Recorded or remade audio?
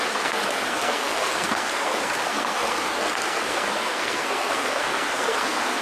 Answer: remade